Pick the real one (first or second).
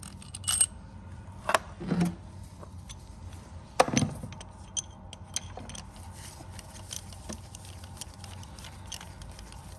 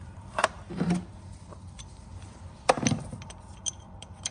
first